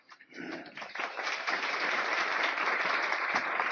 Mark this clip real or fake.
fake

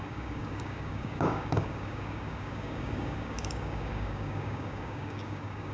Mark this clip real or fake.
fake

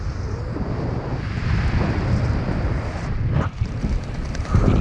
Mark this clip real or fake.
real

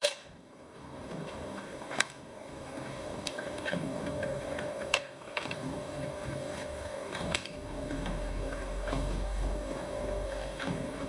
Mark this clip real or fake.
fake